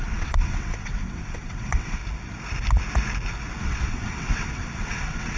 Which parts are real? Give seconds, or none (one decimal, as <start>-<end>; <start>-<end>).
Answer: 2.0-3.6